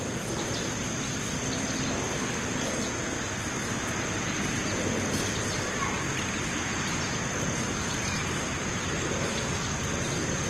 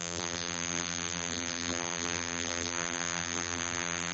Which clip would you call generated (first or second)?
second